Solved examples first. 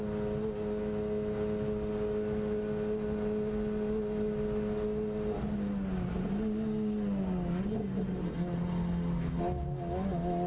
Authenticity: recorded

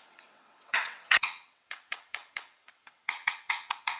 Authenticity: remade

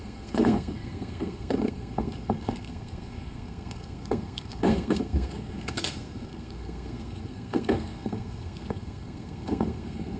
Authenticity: remade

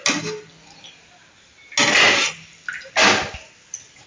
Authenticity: recorded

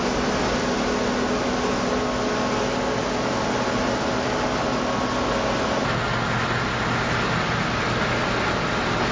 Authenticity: recorded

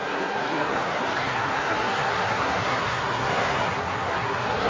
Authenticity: remade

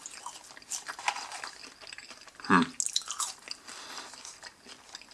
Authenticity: recorded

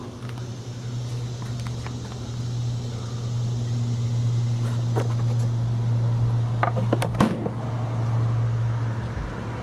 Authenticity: recorded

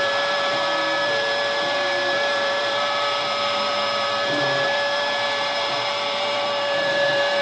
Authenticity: remade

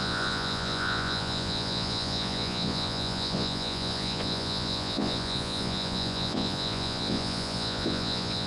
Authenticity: remade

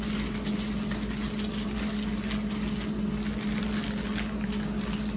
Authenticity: recorded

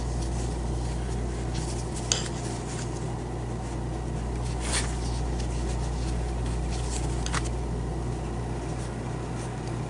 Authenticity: recorded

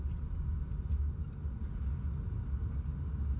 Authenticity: recorded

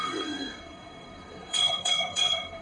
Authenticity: remade